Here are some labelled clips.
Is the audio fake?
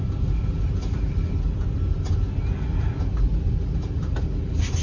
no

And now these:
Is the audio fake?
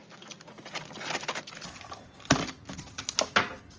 no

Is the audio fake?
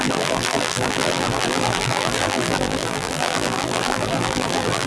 yes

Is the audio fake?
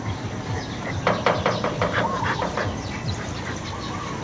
no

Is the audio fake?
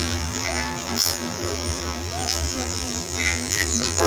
yes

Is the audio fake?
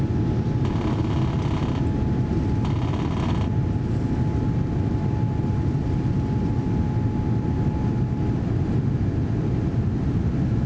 no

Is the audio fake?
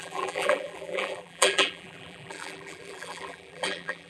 yes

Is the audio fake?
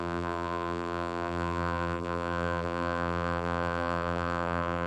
yes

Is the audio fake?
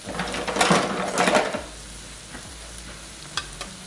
no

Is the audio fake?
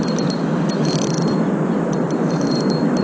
yes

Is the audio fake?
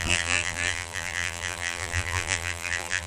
yes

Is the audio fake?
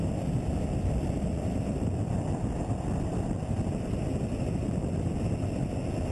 no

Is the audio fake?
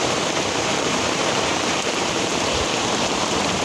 yes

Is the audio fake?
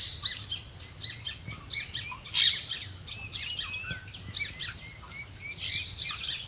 no